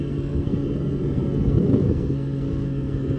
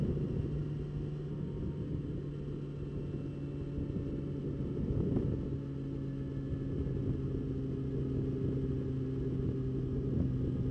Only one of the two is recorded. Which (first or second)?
second